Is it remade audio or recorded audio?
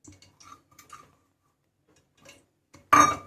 recorded